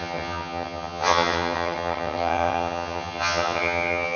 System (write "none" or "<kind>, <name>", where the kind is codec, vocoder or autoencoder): vocoder, HiFi-GAN